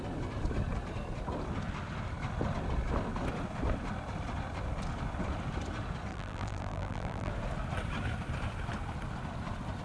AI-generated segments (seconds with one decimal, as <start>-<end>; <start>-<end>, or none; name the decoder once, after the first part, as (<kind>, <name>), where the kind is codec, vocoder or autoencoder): 6.1-7.3 (vocoder, BigVGAN v2)